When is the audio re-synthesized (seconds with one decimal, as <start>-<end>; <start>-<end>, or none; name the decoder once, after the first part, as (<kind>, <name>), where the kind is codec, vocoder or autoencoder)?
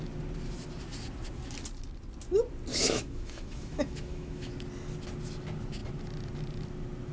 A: 2.7-4.5 (autoencoder, DAC-VAE)